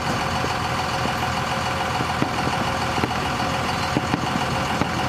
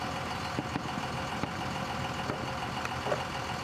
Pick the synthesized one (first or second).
second